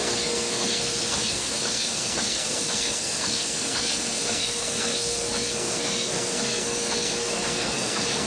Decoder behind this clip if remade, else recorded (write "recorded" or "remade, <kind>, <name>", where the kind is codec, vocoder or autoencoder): remade, codec, SNAC